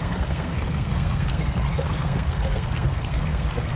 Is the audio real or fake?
fake